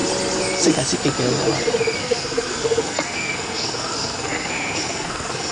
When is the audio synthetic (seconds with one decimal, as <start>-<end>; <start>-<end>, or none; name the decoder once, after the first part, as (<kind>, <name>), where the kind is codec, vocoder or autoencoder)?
2.0-5.5 (codec, SNAC)